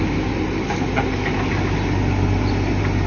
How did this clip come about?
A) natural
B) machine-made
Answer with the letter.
A